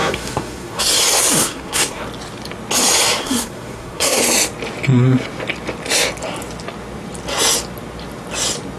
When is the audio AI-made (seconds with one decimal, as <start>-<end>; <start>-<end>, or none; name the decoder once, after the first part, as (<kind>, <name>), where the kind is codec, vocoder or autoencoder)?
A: 0.0-0.8 (codec, SNAC); 1.4-2.0; 3.2-4.2